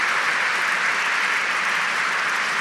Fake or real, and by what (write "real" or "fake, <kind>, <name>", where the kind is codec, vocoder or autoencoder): real